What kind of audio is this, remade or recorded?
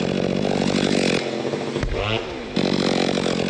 recorded